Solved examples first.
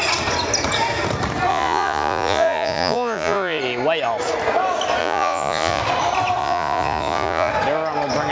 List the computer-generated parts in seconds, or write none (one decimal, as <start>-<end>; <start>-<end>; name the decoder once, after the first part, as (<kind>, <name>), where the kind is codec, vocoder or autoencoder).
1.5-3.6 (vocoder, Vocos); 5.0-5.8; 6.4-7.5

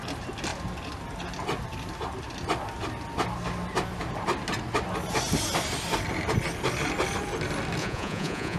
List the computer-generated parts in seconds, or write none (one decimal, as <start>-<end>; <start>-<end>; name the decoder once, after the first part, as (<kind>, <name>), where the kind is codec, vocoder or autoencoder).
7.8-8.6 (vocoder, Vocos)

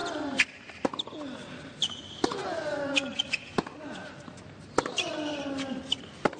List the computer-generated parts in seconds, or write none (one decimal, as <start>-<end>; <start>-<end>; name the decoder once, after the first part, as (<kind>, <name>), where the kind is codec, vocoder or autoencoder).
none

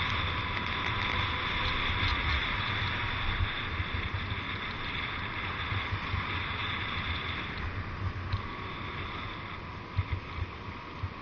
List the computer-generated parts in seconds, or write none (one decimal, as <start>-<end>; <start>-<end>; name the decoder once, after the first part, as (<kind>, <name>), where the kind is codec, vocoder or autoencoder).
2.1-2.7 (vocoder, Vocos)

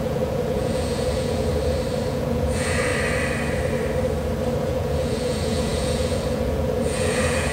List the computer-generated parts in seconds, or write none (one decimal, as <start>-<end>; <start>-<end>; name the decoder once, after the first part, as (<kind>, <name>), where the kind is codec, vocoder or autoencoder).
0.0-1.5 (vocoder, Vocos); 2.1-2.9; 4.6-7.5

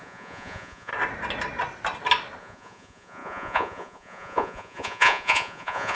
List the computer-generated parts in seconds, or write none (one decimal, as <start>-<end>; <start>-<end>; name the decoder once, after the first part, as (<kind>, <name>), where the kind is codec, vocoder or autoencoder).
0.0-0.9 (vocoder, Vocos); 2.4-5.9

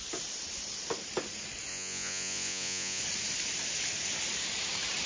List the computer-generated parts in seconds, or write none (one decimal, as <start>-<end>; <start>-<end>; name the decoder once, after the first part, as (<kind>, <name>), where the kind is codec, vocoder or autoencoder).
1.7-3.0 (vocoder, Vocos)